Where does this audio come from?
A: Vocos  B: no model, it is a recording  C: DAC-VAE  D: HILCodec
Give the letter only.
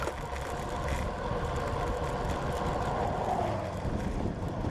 B